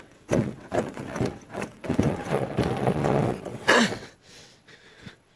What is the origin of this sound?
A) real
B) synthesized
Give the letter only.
B